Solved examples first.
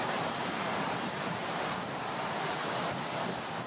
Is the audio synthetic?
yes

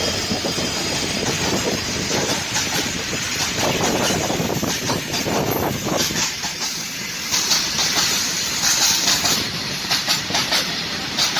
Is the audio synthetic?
yes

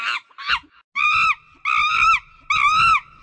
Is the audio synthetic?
no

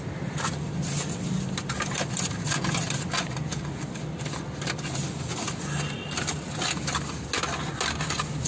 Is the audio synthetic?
no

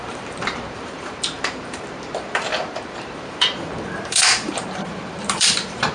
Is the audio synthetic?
yes